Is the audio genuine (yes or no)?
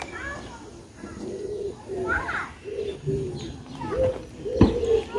yes